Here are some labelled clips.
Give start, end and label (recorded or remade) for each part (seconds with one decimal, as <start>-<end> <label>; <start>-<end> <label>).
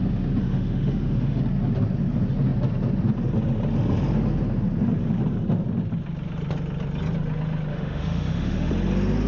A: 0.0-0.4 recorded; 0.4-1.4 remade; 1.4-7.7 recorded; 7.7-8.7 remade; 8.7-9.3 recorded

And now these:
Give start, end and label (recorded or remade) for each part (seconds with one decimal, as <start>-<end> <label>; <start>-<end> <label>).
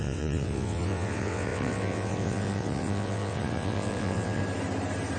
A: 0.0-4.4 remade; 4.4-5.2 recorded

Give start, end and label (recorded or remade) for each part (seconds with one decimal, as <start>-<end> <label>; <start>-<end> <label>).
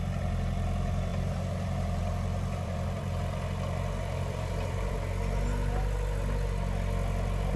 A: 0.0-1.1 recorded; 1.1-4.9 remade; 4.9-7.6 recorded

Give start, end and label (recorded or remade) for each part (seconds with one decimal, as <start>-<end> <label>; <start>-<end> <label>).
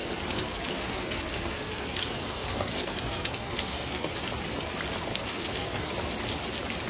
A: 0.0-4.1 remade; 4.1-5.1 recorded; 5.1-5.9 remade; 5.9-6.9 recorded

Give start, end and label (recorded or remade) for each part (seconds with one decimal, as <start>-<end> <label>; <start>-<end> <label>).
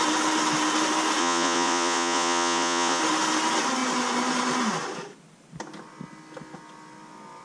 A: 0.0-1.2 recorded; 1.2-3.0 remade; 3.0-7.4 recorded